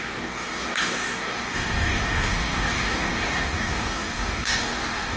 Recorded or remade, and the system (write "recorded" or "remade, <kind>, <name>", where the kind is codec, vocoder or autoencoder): remade, codec, DAC